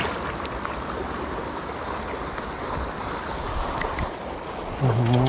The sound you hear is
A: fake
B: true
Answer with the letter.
B